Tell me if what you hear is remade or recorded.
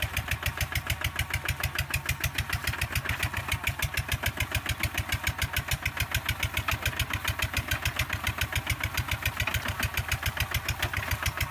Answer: recorded